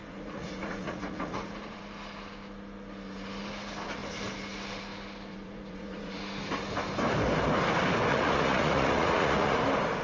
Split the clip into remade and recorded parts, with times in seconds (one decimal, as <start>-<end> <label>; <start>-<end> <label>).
0.0-1.8 remade; 1.8-5.3 recorded; 5.3-6.2 remade; 6.2-8.1 recorded; 8.1-9.6 remade; 9.6-10.0 recorded